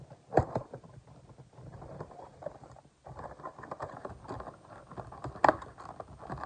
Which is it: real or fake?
real